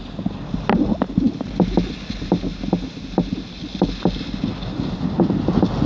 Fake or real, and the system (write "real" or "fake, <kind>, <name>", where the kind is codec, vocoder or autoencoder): real